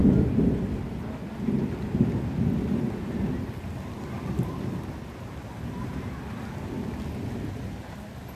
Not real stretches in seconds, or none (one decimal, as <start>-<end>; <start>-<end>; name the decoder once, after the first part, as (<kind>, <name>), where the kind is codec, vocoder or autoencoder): none